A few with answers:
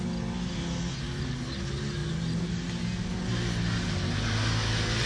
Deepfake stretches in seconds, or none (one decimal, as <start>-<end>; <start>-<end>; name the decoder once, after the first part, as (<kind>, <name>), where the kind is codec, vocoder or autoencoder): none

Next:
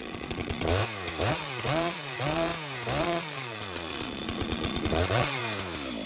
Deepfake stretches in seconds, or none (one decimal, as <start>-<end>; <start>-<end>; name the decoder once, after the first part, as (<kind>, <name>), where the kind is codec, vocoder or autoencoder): 0.0-0.8 (vocoder, Vocos); 1.3-2.5; 3.0-5.4

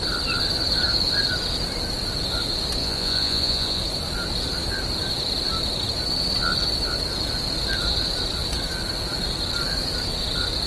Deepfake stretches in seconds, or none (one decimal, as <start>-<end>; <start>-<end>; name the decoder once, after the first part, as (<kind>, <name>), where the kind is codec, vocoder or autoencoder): 2.8-3.8 (vocoder, Vocos)